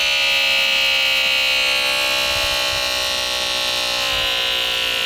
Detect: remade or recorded recorded